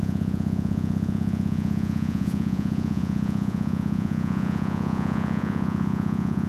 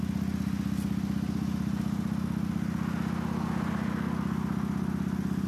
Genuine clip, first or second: second